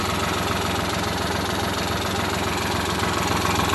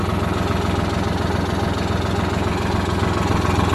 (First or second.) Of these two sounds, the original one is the second